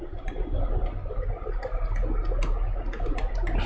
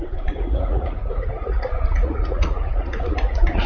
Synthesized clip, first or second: second